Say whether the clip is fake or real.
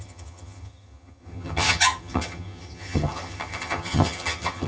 fake